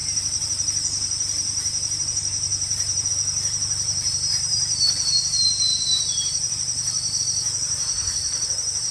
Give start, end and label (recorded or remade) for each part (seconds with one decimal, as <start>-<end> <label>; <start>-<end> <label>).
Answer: 0.0-3.1 remade; 3.1-4.3 recorded; 4.3-5.2 remade; 5.2-5.7 recorded; 5.7-7.2 remade; 7.2-8.9 recorded